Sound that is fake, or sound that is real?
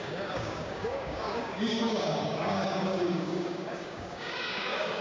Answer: fake